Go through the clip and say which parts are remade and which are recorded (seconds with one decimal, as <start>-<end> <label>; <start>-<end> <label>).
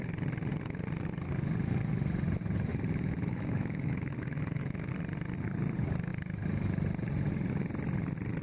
0.0-2.7 recorded; 2.7-4.9 remade; 4.9-8.4 recorded